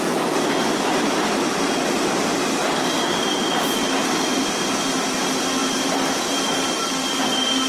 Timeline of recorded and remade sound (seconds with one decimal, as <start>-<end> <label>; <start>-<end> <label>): 0.0-5.6 recorded; 5.6-7.2 remade; 7.2-7.7 recorded